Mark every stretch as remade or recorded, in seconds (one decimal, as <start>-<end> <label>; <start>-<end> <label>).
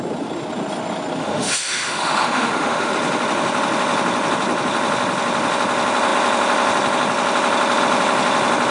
0.0-1.2 recorded; 1.2-2.9 remade; 2.9-8.7 recorded